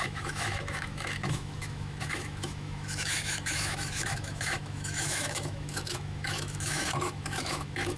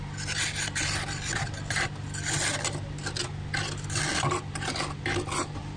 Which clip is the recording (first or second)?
second